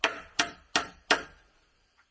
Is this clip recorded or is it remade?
recorded